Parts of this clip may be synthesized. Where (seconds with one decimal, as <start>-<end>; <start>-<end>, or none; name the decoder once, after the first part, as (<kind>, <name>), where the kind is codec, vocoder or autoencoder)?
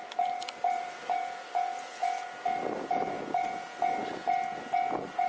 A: 0.0-3.7 (vocoder, BigVGAN v2)